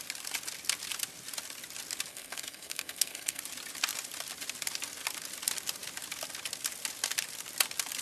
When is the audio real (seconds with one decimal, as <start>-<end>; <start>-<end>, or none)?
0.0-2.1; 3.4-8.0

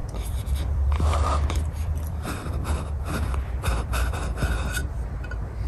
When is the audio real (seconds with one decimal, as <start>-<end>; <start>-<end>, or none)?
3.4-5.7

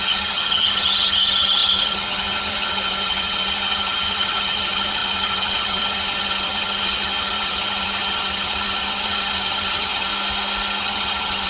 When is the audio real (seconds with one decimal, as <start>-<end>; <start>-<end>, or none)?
10.1-10.8